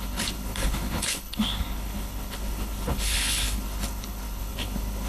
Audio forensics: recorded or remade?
remade